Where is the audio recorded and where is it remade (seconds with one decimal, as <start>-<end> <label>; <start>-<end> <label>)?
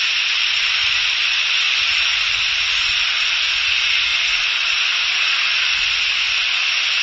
0.0-7.0 recorded